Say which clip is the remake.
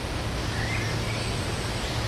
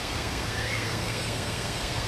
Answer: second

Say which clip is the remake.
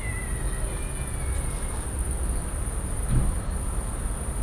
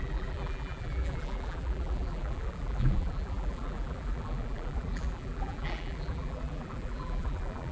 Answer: second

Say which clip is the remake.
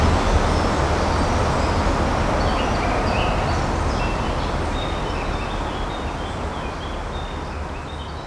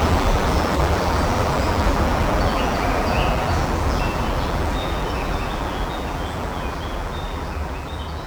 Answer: second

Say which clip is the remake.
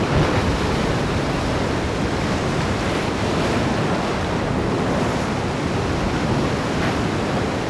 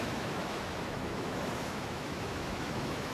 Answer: second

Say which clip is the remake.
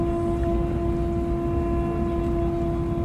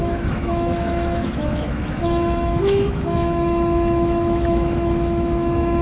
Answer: second